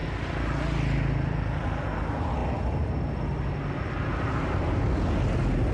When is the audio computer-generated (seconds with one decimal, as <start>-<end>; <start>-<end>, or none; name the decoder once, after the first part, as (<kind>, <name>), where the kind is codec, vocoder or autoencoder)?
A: none